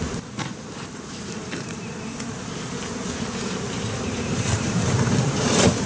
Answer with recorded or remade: remade